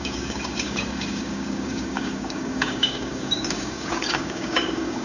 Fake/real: fake